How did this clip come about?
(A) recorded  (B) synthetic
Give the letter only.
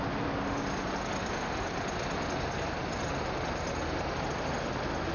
A